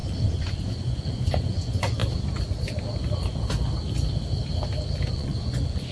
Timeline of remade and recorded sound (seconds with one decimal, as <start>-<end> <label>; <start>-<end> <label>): 0.0-2.0 remade; 2.0-5.1 recorded; 5.1-5.9 remade